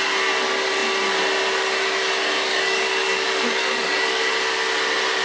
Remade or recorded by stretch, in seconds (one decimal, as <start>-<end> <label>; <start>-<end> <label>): 0.0-2.5 recorded; 2.5-4.3 remade; 4.3-5.2 recorded